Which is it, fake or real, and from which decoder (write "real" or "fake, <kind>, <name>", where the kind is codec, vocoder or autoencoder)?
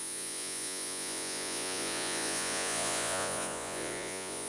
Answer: fake, vocoder, Vocos